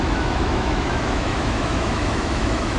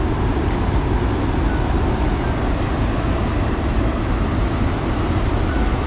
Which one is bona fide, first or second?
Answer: second